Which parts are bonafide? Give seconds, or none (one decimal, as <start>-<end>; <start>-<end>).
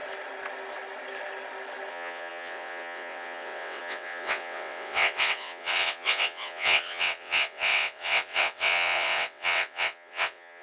0.0-1.9